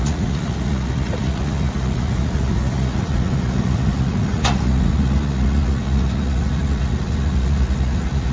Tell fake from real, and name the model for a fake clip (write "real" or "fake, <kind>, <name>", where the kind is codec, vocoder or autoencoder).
fake, vocoder, Vocos